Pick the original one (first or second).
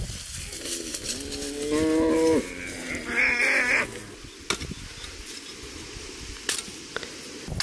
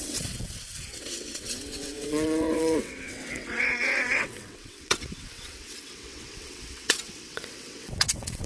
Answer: first